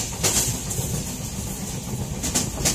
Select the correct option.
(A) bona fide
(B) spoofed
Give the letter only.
A